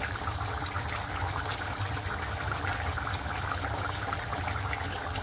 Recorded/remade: recorded